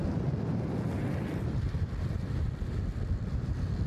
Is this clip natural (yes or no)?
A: yes